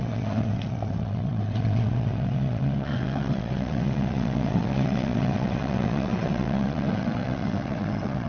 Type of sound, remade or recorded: remade